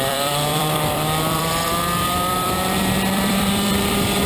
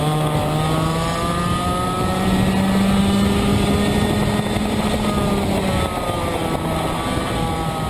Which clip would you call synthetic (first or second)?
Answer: first